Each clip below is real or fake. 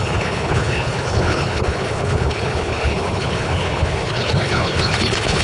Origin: fake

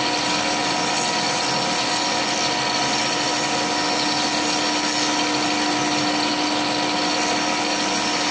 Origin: real